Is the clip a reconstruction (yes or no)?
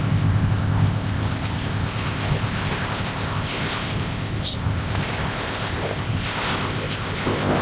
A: yes